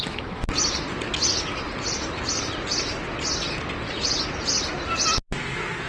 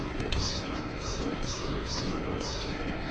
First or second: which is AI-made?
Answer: second